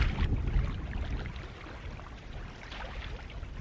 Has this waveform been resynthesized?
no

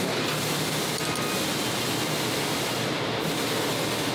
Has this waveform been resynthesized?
no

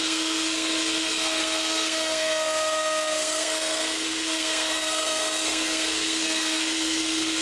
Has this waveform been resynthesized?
yes